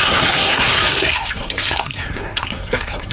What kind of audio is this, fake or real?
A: fake